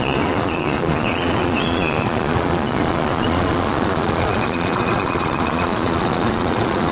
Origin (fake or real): fake